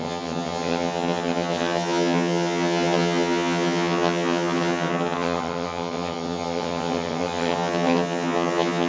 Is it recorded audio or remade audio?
remade